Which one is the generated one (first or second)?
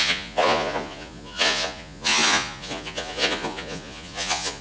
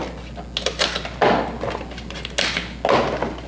first